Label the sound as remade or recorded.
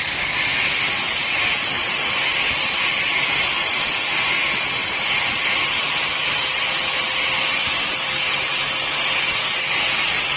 recorded